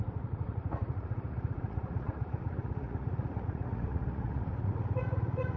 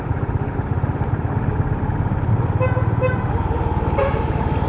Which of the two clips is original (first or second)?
second